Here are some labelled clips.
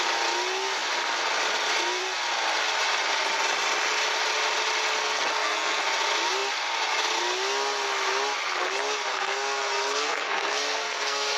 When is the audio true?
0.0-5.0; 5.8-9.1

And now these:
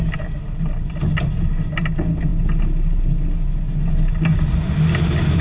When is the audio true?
0.0-5.4

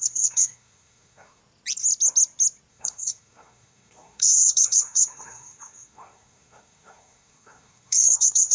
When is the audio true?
1.4-2.7

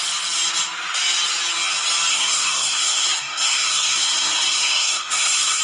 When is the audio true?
0.0-2.1

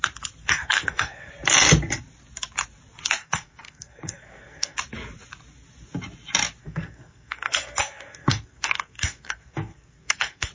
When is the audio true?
0.0-0.4; 1.3-3.2; 4.8-6.6